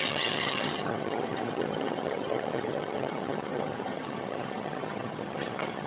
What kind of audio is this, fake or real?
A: fake